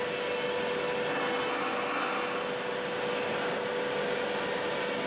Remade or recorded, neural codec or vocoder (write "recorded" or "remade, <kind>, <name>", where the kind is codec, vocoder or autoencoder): recorded